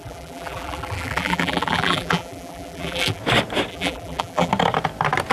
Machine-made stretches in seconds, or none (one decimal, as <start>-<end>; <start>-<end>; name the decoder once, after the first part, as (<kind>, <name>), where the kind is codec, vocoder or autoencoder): 0.0-3.2 (vocoder, BigVGAN v2); 3.7-4.5